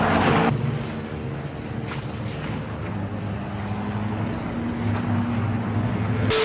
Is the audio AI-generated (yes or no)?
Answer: no